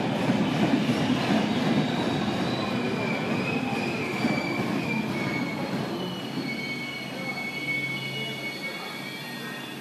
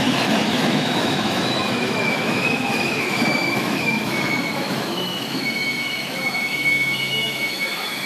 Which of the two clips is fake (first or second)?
second